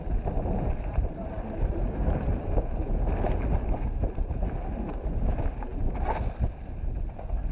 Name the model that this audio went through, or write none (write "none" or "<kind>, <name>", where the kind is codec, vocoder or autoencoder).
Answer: none